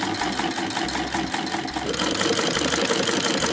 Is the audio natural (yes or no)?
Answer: yes